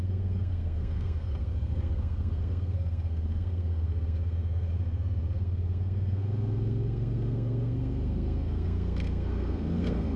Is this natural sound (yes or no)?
no